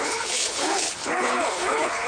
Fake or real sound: fake